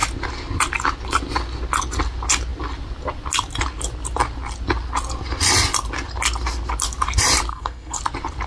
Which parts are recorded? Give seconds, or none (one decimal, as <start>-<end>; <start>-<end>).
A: 0.0-7.5; 8.0-8.5